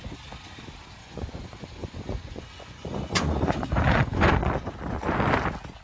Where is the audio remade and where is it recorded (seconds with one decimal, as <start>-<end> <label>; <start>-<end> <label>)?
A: 0.0-1.0 recorded; 1.0-4.5 remade; 4.5-5.8 recorded